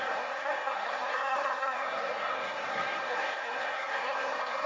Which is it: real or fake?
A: fake